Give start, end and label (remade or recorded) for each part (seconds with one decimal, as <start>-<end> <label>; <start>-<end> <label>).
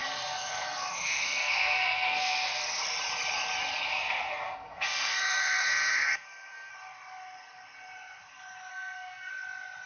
0.0-2.8 remade; 2.8-3.9 recorded; 3.9-6.7 remade; 6.7-8.7 recorded; 8.7-9.3 remade; 9.3-9.9 recorded